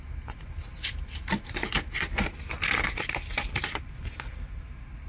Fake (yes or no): no